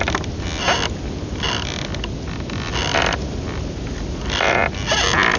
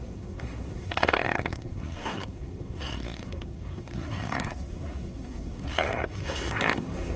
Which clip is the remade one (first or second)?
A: second